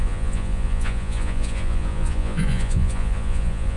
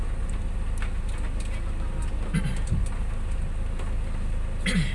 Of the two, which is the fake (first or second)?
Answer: first